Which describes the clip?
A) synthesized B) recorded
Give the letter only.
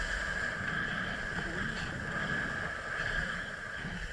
B